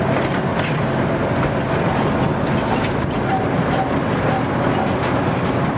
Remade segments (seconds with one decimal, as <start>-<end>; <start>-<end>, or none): none